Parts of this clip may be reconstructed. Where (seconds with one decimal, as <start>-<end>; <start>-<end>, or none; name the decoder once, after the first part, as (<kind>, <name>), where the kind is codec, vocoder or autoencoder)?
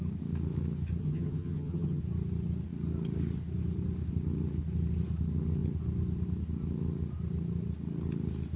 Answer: 1.0-2.0 (vocoder, HiFi-GAN)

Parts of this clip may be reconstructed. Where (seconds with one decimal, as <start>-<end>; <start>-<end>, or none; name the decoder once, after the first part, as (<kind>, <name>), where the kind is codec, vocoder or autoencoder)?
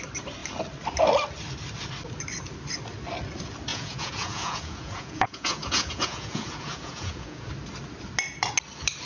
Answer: 3.7-7.5 (vocoder, Vocos)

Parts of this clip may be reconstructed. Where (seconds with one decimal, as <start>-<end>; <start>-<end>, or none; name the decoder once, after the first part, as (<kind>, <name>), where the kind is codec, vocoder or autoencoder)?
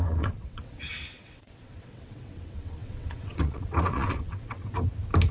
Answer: 0.0-4.6 (vocoder, WaveNeXt)